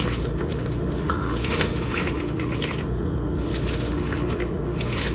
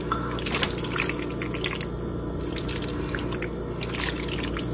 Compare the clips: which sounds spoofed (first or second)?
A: first